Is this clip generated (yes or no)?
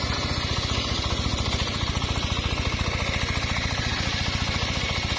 no